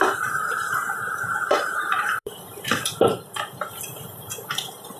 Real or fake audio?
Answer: fake